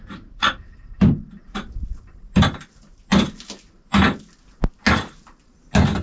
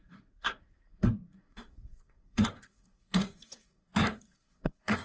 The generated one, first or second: second